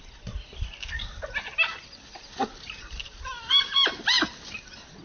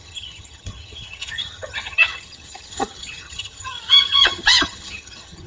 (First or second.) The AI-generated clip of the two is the second